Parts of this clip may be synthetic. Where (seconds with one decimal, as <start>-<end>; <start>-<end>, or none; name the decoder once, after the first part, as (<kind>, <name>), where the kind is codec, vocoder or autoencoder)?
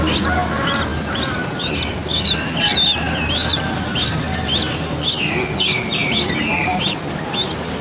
none